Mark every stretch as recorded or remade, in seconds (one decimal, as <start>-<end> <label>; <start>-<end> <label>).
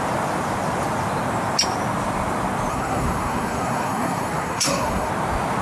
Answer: 0.0-2.7 recorded; 2.7-5.1 remade; 5.1-5.6 recorded